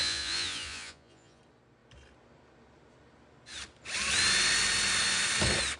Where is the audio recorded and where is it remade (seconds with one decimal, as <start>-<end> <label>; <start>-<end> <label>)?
0.0-1.4 remade; 1.4-5.8 recorded